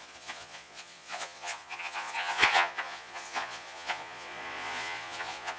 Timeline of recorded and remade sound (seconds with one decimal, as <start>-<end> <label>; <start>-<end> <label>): 0.0-5.6 remade